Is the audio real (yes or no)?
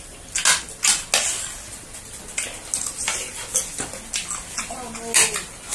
yes